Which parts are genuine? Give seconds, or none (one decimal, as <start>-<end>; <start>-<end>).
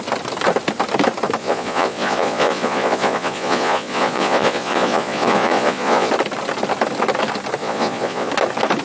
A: 0.0-1.4; 6.1-7.6; 8.3-8.8